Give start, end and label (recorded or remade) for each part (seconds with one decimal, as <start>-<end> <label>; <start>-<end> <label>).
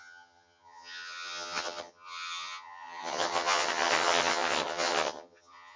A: 0.0-5.8 remade